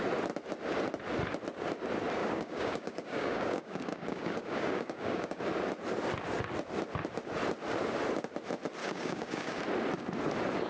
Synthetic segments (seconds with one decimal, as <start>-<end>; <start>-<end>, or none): 2.2-5.4; 8.8-9.6